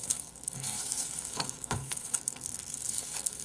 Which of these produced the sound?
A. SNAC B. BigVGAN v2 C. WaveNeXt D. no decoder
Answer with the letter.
A